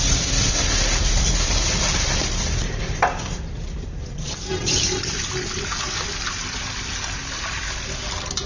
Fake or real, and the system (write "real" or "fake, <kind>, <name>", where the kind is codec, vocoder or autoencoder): fake, vocoder, BigVGAN v2